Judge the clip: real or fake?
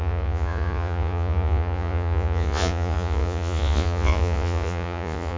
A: fake